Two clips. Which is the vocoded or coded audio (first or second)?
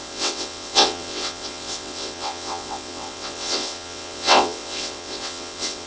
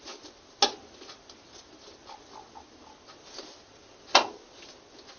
first